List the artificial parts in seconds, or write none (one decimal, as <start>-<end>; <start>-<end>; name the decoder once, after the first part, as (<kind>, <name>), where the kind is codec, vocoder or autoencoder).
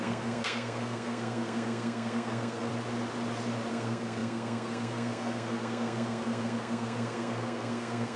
0.0-2.7 (codec, SNAC); 3.7-8.2